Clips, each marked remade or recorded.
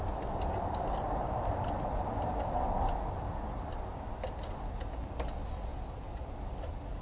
recorded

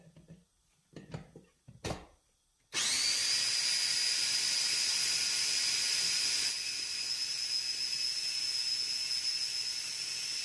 recorded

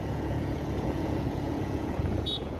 remade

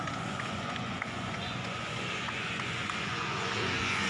remade